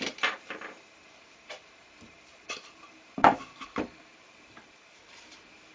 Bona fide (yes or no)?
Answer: no